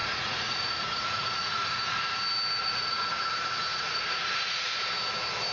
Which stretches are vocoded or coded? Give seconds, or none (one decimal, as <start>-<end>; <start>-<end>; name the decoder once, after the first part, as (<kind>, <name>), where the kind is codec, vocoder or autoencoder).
0.0-2.0 (vocoder, Vocos); 2.6-3.2; 3.7-4.7